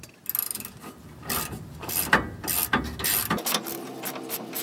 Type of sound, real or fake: real